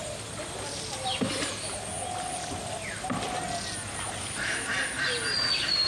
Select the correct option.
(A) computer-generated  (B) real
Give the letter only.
B